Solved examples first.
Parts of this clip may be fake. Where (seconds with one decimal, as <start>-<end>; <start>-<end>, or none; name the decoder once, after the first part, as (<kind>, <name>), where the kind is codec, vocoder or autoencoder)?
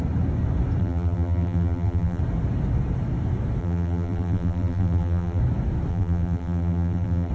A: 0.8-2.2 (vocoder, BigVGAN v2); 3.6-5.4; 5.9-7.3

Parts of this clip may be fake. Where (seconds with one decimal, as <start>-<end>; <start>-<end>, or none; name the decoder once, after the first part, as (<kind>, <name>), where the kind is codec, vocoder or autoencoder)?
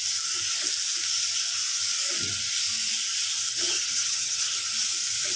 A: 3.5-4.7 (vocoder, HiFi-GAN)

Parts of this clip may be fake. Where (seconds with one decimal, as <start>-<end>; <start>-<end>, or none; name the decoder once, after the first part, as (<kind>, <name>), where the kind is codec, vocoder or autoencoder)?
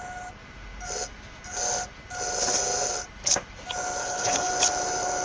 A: 4.0-4.5 (codec, HILCodec)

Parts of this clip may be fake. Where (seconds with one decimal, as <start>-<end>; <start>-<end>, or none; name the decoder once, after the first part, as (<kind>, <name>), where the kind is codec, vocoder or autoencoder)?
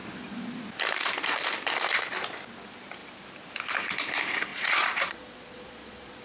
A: 4.5-6.2 (vocoder, Vocos)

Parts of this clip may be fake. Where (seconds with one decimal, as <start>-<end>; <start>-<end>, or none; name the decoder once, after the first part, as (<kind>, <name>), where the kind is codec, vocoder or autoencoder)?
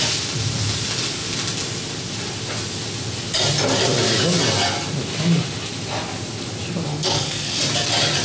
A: 6.9-7.6 (codec, SNAC)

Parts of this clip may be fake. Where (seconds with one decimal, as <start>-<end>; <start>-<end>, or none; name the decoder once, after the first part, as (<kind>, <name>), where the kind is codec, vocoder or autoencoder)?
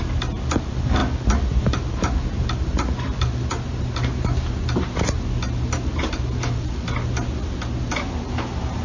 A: none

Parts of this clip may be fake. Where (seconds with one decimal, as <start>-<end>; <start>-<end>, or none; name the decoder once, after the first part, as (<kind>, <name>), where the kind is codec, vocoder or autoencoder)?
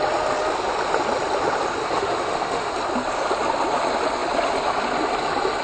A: 1.8-2.7 (autoencoder, DAC-VAE)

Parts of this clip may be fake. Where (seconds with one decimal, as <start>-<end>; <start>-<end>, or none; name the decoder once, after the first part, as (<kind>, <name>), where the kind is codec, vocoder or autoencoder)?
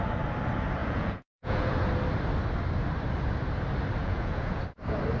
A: 0.8-1.7 (vocoder, Vocos); 4.0-4.6